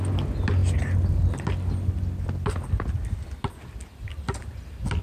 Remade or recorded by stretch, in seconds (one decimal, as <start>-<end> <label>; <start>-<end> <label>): 0.0-5.0 recorded